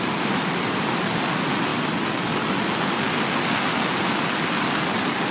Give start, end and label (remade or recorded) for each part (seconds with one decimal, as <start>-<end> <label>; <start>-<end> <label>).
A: 0.0-5.3 recorded